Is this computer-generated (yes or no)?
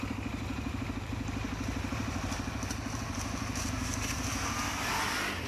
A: no